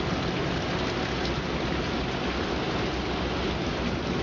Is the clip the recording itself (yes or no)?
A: yes